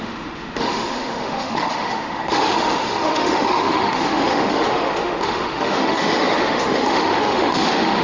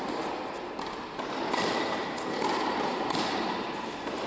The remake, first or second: first